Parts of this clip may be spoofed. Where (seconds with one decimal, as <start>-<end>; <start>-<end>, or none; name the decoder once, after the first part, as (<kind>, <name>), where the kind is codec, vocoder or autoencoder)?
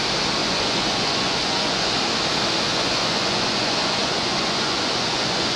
0.4-1.9 (vocoder, Vocos); 2.7-5.6